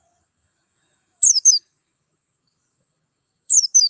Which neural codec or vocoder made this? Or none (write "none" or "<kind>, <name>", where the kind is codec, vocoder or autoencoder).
autoencoder, DAC-VAE